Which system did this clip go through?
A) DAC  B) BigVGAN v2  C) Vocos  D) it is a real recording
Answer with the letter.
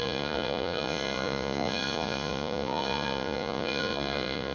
C